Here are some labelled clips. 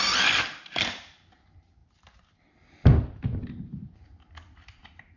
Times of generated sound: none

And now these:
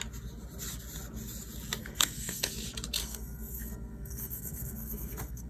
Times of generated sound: 1.8-2.5; 3.0-5.5

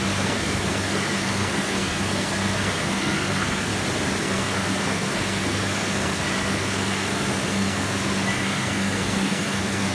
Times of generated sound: 0.0-3.7; 4.2-9.9